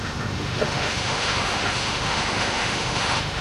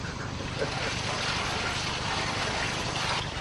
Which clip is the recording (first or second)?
second